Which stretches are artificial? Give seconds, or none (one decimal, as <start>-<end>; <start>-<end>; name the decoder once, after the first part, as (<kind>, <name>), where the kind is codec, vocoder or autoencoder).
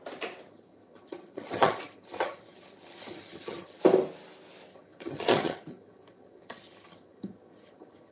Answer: 0.5-3.8 (vocoder, HiFi-GAN); 4.7-8.1